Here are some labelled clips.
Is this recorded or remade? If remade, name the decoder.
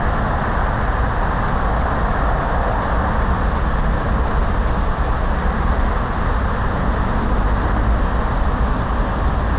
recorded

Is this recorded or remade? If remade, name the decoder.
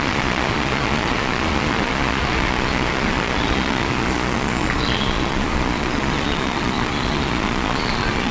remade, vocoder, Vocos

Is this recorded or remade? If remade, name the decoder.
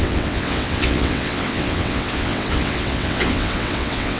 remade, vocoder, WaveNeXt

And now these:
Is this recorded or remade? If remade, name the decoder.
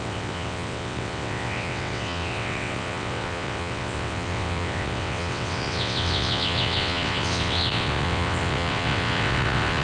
remade, vocoder, WaveNeXt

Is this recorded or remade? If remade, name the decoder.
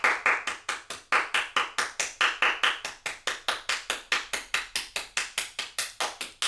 recorded